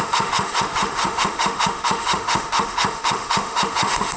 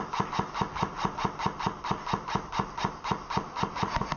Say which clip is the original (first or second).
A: second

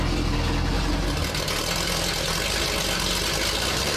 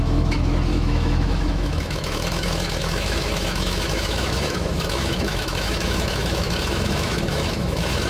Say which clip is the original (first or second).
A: first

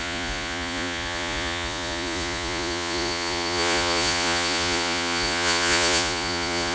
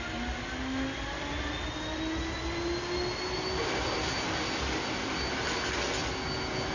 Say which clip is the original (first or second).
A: second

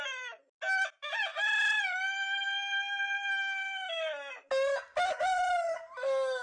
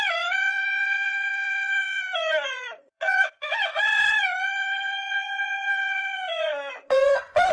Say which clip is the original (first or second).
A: first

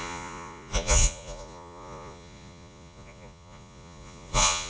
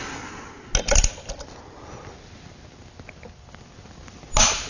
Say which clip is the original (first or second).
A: second